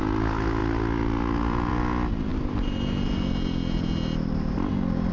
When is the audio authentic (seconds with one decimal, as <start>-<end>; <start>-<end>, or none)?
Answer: 0.0-5.1